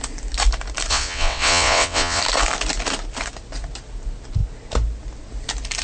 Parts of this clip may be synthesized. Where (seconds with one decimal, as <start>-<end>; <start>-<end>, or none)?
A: 0.9-2.2